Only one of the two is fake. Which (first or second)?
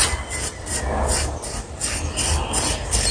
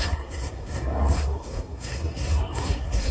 second